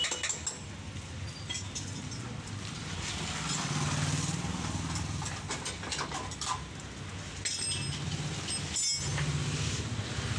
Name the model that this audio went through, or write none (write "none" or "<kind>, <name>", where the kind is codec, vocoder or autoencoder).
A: none